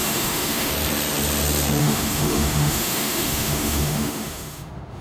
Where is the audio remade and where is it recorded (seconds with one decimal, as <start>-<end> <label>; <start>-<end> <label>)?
0.0-0.7 remade; 0.7-1.8 recorded; 1.8-5.0 remade